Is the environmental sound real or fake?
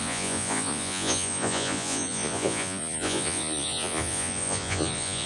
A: fake